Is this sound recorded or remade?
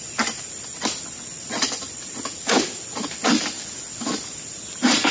recorded